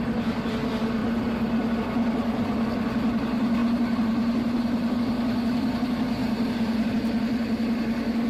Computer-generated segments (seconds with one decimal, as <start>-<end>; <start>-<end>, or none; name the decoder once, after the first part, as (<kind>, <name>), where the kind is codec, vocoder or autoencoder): 3.6-5.0 (vocoder, BigVGAN v2); 6.2-6.9